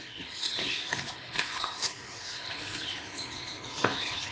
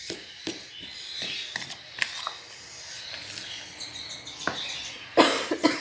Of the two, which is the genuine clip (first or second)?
second